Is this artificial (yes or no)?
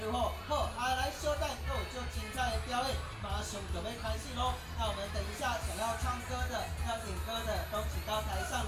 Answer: no